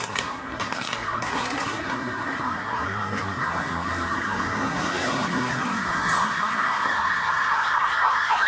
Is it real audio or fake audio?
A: fake